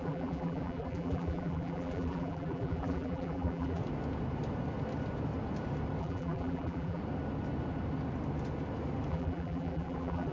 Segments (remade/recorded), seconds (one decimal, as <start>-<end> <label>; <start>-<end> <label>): 0.0-3.8 remade; 3.8-6.0 recorded; 6.0-7.0 remade; 7.0-9.1 recorded; 9.1-10.3 remade